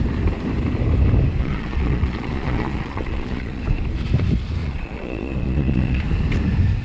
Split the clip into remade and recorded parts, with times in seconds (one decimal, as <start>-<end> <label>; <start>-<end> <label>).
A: 0.0-1.4 recorded; 1.4-3.6 remade; 3.6-4.6 recorded; 4.6-6.0 remade; 6.0-6.8 recorded